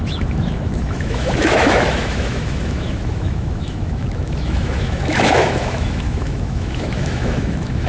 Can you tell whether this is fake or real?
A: fake